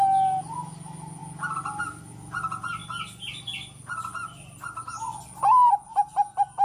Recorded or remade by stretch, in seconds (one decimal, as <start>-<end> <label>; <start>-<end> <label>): 0.0-6.6 recorded